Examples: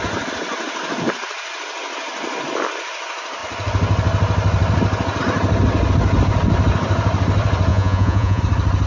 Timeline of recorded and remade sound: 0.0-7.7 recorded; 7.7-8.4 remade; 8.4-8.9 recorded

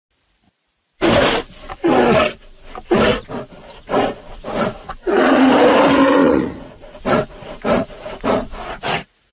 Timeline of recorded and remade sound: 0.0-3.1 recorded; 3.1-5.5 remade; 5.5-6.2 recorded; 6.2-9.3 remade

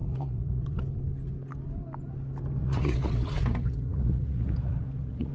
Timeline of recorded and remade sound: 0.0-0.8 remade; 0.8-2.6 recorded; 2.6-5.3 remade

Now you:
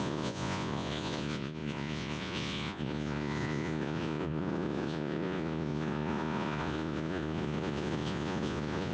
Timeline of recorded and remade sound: 0.0-8.9 remade

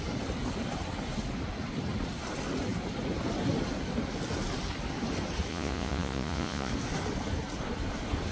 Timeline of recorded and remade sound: 0.0-5.5 recorded; 5.5-6.7 remade; 6.7-8.3 recorded